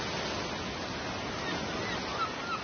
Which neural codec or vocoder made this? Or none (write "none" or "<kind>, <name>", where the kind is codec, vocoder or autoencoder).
none